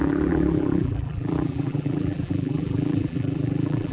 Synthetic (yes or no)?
yes